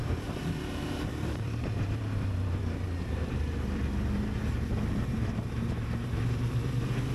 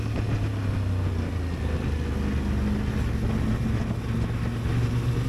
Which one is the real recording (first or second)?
second